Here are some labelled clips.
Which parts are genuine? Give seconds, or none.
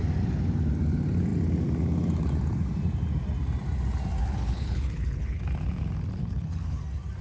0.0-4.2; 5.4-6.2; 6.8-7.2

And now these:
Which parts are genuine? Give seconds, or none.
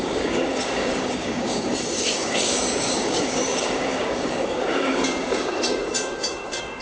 none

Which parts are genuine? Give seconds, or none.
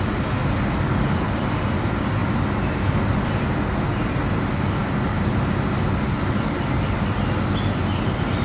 0.0-8.4